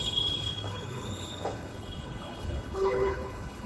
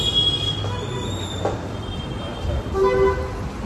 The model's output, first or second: first